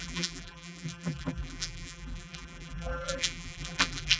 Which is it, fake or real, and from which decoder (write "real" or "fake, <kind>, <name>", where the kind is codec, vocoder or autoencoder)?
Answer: fake, vocoder, BigVGAN v2